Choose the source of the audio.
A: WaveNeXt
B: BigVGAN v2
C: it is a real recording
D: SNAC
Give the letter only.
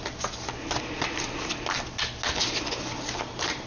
C